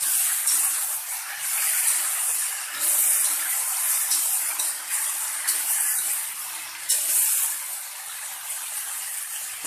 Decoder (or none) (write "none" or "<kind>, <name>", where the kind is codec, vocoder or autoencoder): none